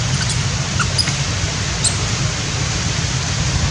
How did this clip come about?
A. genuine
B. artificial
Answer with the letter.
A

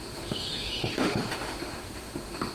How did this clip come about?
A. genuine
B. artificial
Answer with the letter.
B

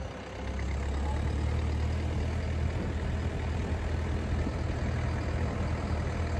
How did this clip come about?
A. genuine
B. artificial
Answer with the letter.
A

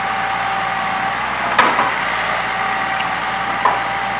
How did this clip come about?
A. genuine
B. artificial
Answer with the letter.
A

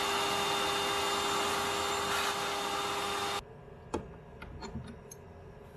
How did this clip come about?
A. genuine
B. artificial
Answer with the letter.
A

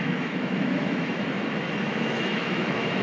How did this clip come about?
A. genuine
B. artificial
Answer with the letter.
B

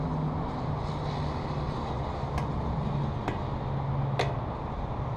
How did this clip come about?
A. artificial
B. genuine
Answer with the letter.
B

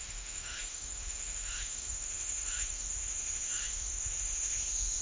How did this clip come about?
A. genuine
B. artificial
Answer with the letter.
B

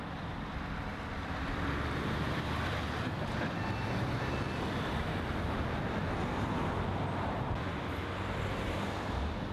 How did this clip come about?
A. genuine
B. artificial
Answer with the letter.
A